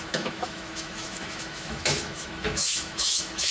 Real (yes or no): no